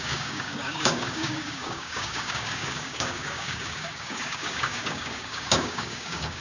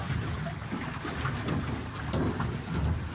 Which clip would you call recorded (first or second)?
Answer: second